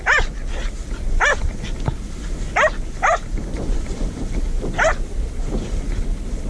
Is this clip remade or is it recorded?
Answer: recorded